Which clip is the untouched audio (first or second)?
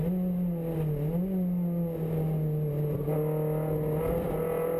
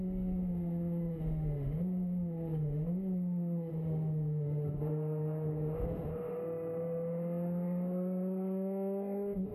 first